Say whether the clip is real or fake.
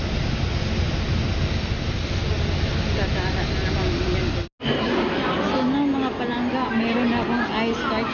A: real